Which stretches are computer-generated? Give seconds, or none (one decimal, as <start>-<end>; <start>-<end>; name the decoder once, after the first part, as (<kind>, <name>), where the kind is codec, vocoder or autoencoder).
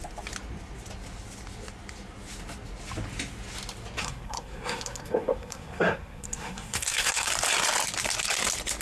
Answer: 4.0-7.3 (codec, SNAC)